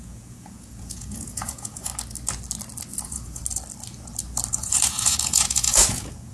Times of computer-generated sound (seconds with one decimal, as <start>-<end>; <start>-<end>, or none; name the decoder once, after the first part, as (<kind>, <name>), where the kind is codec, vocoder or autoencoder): 0.0-1.9 (vocoder, Vocos); 3.0-3.4; 4.5-6.3